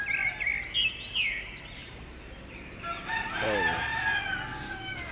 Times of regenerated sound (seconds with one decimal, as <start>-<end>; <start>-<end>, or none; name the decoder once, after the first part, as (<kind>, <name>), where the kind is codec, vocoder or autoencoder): 4.5-5.1 (codec, DAC)